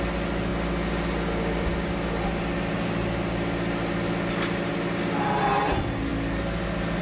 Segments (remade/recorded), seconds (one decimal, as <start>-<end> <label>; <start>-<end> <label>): 0.0-7.0 recorded